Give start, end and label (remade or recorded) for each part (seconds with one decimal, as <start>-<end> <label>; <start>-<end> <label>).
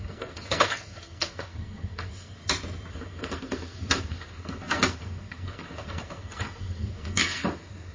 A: 0.0-2.4 remade; 2.4-2.9 recorded; 2.9-7.9 remade